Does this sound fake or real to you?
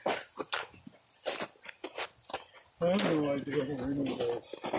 real